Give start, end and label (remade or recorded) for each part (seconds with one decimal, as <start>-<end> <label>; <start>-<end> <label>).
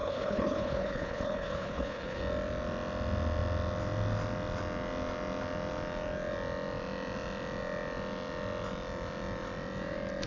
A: 0.0-2.2 remade; 2.2-10.3 recorded